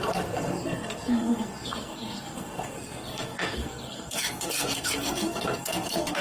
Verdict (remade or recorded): remade